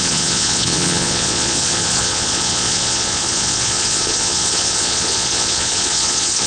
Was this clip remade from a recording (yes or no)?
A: yes